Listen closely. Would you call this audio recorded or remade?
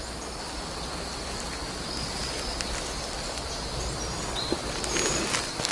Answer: recorded